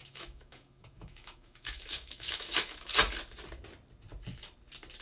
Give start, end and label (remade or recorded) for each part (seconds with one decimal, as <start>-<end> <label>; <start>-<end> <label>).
0.0-2.9 remade; 2.9-5.0 recorded